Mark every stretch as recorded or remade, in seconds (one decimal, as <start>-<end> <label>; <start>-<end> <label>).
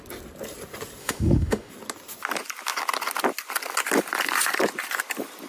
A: 0.0-1.0 recorded; 1.0-1.7 remade; 1.7-5.5 recorded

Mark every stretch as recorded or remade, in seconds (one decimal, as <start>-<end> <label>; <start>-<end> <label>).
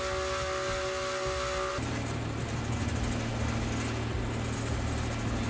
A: 0.0-1.7 recorded; 1.7-2.9 remade; 2.9-5.5 recorded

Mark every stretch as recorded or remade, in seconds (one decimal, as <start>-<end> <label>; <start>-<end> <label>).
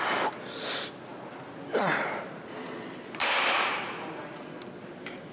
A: 0.0-3.2 recorded; 3.2-3.7 remade; 3.7-5.3 recorded